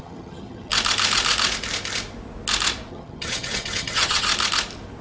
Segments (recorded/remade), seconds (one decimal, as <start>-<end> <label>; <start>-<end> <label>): 0.0-0.7 remade; 0.7-2.9 recorded; 2.9-4.3 remade; 4.3-5.0 recorded